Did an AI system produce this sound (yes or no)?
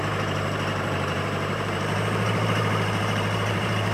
yes